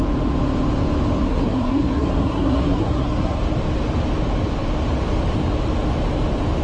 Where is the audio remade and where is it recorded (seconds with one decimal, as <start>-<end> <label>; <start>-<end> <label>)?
0.0-1.2 recorded; 1.2-3.4 remade; 3.4-6.6 recorded